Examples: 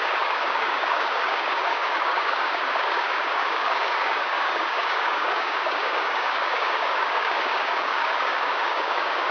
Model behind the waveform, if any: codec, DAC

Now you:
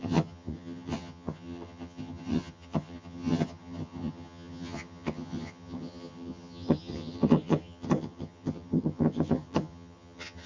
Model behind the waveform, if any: vocoder, HiFi-GAN